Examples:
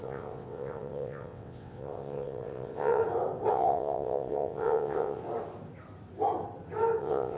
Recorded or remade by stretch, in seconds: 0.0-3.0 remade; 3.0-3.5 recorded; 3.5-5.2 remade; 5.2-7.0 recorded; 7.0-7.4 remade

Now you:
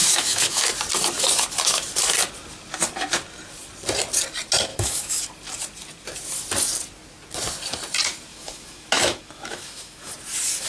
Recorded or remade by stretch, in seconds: 0.0-0.7 remade; 0.7-4.7 recorded; 4.7-5.3 remade; 5.3-8.3 recorded; 8.3-10.1 remade; 10.1-10.7 recorded

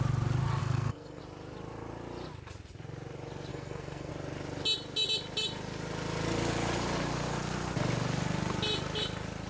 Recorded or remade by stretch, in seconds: 0.0-0.6 recorded; 0.6-1.2 remade; 1.2-3.5 recorded; 3.5-4.1 remade; 4.1-9.5 recorded

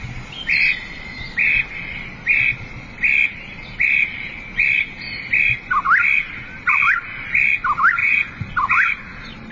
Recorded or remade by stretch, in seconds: 0.0-8.0 recorded; 8.0-8.5 remade; 8.5-9.5 recorded

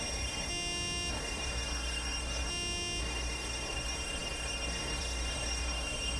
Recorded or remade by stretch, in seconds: 0.0-0.5 remade; 0.5-1.1 recorded; 1.1-2.5 remade; 2.5-3.0 recorded; 3.0-6.2 remade

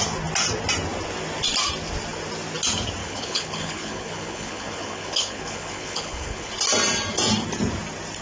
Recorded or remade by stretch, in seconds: 0.0-3.0 recorded; 3.0-6.5 remade; 6.5-8.2 recorded